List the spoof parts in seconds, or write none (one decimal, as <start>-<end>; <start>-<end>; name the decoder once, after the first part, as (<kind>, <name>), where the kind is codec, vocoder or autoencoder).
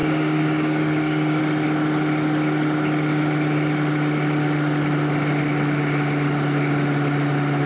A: 0.0-1.4 (codec, DAC)